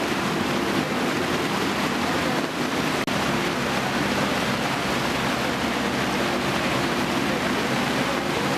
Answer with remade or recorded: recorded